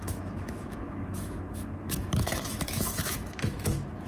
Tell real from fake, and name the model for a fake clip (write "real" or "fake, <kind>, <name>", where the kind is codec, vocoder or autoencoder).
fake, autoencoder, DAC-VAE